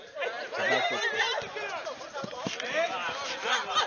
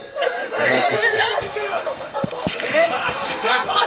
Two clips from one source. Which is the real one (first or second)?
first